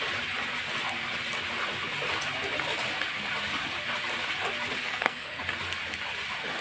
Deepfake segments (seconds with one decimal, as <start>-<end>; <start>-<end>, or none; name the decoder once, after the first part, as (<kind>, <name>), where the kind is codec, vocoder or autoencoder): 4.8-5.4 (codec, SNAC)